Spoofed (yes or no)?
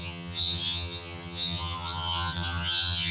yes